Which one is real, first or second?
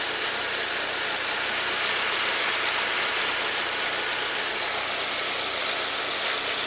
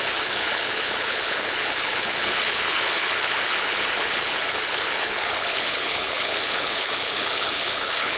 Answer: first